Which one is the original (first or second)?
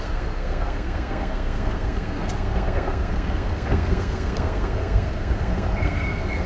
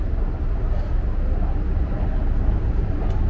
second